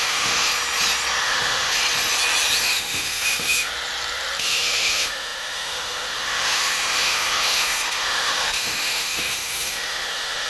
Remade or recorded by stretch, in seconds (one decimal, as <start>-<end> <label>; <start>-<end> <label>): 0.0-0.5 remade; 0.5-1.2 recorded; 1.2-1.8 remade; 1.8-2.6 recorded; 2.6-3.7 remade; 3.7-4.4 recorded; 4.4-10.5 remade